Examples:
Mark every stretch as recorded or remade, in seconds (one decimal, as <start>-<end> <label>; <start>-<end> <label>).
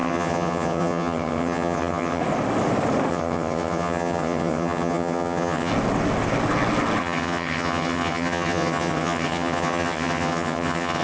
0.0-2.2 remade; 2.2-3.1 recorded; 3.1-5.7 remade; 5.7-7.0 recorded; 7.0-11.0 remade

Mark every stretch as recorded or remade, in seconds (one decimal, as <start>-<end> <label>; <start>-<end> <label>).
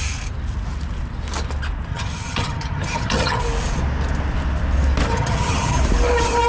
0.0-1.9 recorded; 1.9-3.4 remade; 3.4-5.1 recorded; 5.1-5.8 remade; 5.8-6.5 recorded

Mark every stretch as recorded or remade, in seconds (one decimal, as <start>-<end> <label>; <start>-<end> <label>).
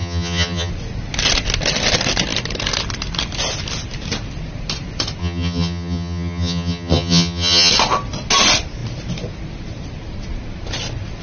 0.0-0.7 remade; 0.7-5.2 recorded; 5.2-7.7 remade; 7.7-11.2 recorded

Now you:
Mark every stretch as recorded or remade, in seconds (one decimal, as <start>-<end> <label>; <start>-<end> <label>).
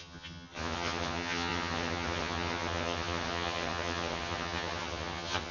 0.0-5.5 remade